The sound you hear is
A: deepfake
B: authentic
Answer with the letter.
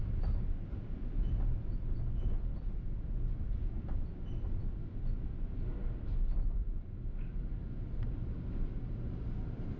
B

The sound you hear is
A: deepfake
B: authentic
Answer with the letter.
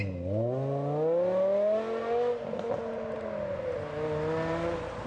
B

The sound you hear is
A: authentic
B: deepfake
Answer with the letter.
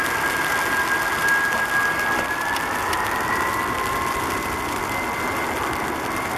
A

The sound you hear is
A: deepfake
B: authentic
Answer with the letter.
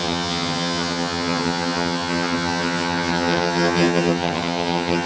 A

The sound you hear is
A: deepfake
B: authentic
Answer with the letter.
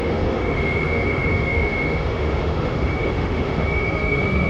A